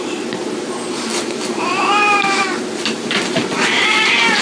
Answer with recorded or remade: recorded